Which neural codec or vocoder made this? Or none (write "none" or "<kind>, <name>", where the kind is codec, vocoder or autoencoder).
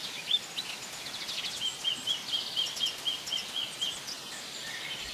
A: none